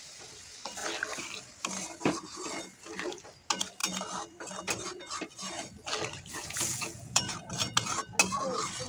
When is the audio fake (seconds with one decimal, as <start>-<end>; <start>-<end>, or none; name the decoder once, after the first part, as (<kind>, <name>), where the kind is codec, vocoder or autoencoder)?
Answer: 6.4-7.5 (vocoder, Vocos)